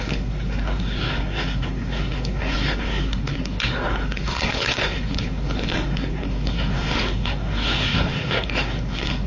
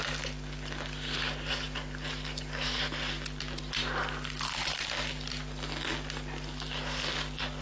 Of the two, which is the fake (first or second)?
first